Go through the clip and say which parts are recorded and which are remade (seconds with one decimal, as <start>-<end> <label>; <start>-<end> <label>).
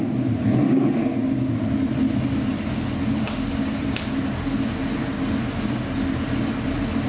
0.0-7.1 recorded